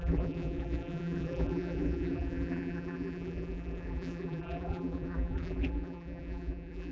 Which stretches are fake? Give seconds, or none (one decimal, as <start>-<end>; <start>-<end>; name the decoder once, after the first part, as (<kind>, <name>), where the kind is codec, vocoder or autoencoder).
0.0-6.9 (vocoder, BigVGAN v2)